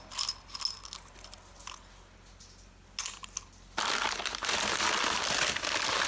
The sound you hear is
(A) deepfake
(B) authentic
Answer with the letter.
B